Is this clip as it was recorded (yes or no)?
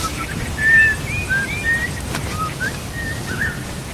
yes